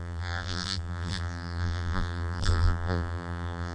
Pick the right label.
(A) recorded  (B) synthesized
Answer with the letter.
B